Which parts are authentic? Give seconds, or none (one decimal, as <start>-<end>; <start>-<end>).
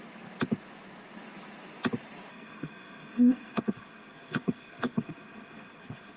0.0-2.3